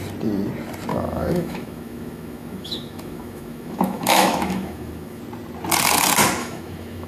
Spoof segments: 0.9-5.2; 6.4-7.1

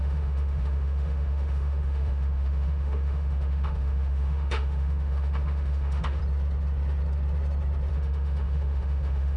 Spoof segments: 0.0-6.2; 7.9-9.4

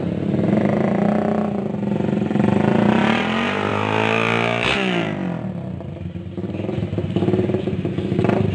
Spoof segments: none

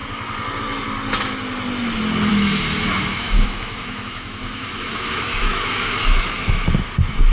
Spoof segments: 2.3-6.7